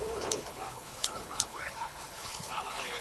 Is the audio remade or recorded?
remade